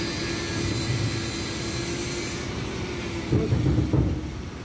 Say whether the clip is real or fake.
real